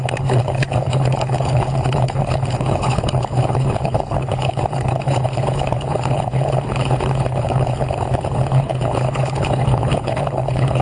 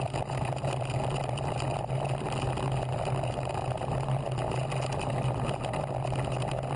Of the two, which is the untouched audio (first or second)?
second